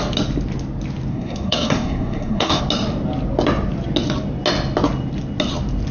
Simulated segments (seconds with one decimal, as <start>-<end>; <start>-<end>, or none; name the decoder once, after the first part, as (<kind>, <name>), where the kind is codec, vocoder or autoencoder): 1.1-2.6 (codec, SNAC)